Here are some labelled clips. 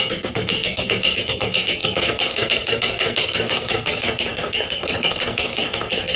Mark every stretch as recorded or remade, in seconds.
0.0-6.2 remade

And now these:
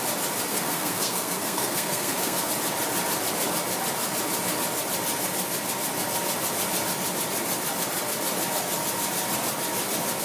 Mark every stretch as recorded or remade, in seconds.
0.0-0.5 recorded; 0.5-2.5 remade; 2.5-10.2 recorded

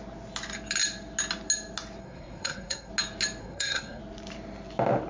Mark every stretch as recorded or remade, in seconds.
0.0-2.0 recorded; 2.0-2.9 remade; 2.9-3.4 recorded; 3.4-4.0 remade; 4.0-5.1 recorded

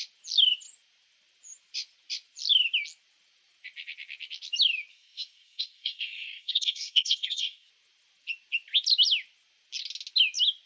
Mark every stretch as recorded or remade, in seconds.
0.0-4.9 recorded; 4.9-7.7 remade; 7.7-10.7 recorded

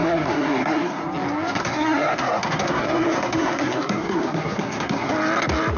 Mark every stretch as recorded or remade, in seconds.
0.0-1.0 remade; 1.0-1.6 recorded; 1.6-5.1 remade; 5.1-5.8 recorded

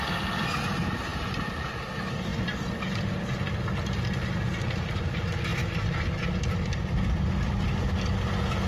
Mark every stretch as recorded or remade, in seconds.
0.0-8.7 recorded

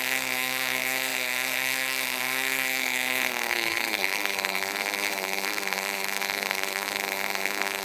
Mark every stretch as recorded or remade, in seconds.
0.0-7.8 remade